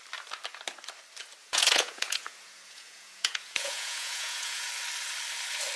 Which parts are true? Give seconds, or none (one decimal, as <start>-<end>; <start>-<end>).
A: 0.0-1.4; 4.7-5.8